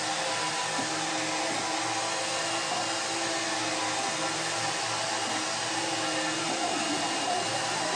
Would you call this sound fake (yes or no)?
no